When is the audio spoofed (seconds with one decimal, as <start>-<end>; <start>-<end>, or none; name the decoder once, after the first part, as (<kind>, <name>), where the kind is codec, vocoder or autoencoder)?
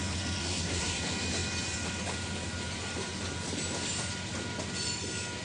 0.4-1.0 (codec, SNAC)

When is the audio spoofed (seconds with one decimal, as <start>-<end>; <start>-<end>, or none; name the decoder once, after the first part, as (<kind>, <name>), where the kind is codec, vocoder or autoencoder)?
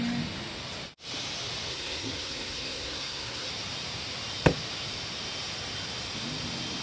1.7-3.5 (codec, SNAC)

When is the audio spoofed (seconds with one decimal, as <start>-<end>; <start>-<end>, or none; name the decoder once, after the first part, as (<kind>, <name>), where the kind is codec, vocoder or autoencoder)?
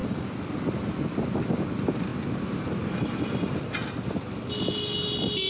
none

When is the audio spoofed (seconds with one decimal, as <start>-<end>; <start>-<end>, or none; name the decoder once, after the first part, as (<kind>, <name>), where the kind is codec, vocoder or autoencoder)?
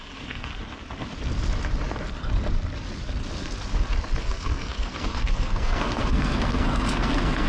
0.0-0.5 (codec, SNAC); 4.2-7.5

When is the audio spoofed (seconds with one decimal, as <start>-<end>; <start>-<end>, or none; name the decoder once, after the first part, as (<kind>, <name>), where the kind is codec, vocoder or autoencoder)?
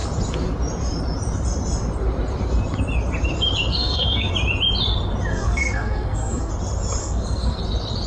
3.7-4.3 (codec, SNAC); 5.3-6.5; 7.0-7.6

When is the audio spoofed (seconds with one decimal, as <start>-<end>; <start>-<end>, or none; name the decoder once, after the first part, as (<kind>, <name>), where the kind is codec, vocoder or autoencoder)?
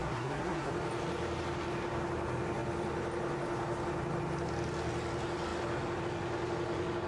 0.0-0.7 (codec, SNAC)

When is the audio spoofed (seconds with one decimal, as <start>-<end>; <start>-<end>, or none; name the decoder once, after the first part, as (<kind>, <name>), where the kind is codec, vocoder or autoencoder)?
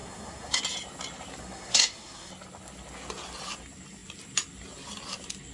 0.0-0.6 (codec, SNAC); 1.4-2.3